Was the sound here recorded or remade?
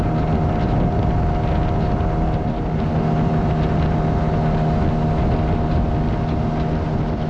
recorded